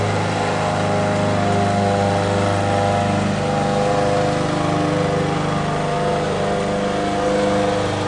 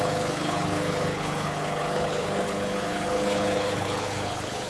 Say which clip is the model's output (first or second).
second